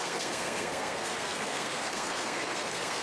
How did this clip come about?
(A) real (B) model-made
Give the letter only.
B